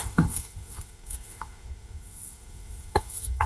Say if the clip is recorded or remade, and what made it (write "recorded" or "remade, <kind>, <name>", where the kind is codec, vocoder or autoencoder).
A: remade, codec, SNAC